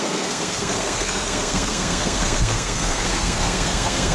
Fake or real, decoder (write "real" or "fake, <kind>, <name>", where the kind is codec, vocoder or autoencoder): fake, codec, SNAC